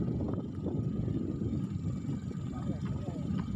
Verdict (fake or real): real